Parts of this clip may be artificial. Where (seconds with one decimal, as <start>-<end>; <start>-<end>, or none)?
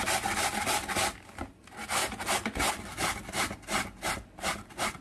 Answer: 0.0-2.0; 2.7-5.0